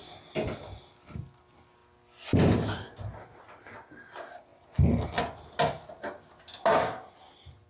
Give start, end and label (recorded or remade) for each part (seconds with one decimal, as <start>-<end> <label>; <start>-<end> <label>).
0.0-7.7 recorded